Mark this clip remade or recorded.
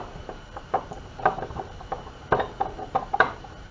remade